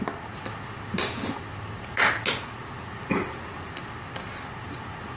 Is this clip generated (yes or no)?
no